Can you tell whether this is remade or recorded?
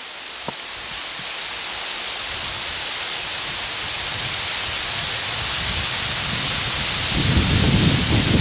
recorded